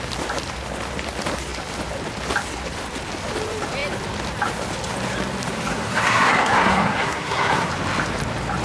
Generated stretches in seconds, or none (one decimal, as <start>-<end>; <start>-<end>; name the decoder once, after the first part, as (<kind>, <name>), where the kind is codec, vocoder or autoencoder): 5.7-7.7 (codec, SNAC)